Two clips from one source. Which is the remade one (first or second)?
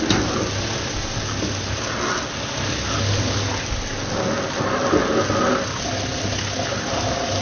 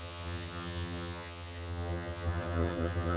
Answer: second